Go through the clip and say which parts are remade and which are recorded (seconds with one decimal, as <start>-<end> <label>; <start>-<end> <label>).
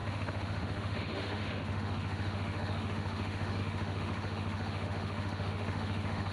0.0-6.3 remade